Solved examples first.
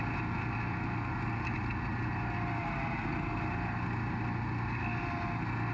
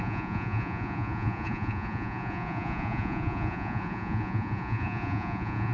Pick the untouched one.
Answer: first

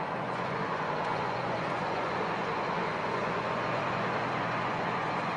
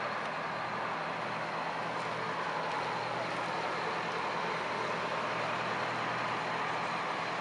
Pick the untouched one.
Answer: second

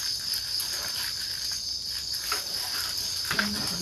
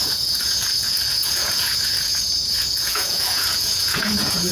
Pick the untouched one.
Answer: first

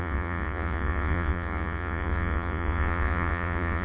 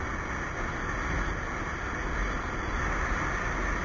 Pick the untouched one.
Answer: second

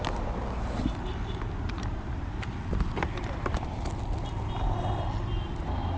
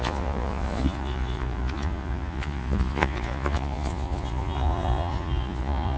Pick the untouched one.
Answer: first